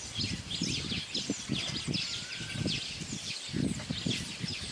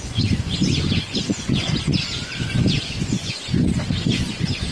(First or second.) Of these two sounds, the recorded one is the first